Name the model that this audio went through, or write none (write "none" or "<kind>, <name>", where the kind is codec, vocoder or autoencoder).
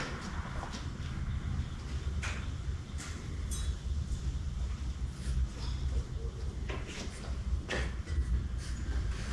none